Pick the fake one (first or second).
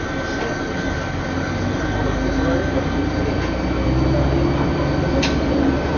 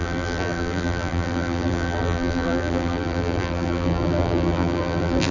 second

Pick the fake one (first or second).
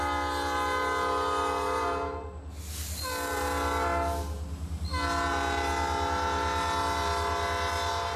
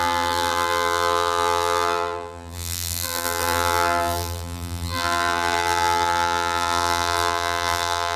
second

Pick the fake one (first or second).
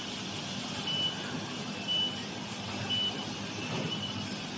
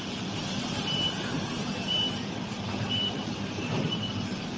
second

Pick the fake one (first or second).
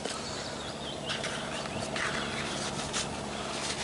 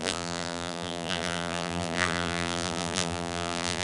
second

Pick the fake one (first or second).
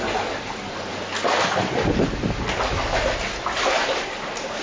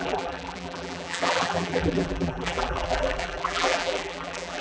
second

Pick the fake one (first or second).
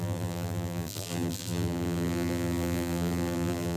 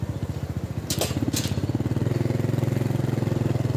first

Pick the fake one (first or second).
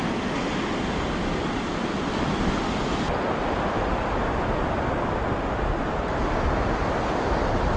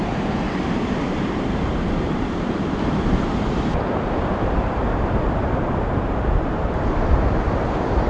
second